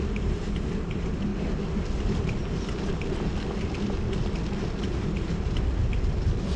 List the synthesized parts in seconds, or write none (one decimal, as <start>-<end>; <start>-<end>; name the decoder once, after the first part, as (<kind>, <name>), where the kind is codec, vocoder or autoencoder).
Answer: 0.0-3.3 (vocoder, BigVGAN v2); 4.7-6.6